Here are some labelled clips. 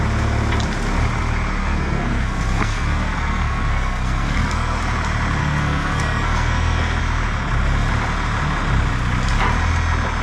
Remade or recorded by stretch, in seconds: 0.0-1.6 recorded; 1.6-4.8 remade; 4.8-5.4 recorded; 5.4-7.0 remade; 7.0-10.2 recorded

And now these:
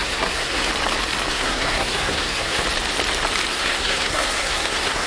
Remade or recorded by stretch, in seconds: 0.0-0.7 remade; 0.7-1.3 recorded; 1.3-2.6 remade; 2.6-3.5 recorded; 3.5-5.1 remade

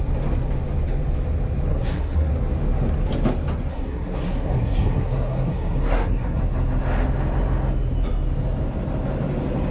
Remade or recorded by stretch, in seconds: 0.0-1.7 recorded; 1.7-2.3 remade; 2.3-3.7 recorded; 3.7-6.4 remade; 6.4-9.7 recorded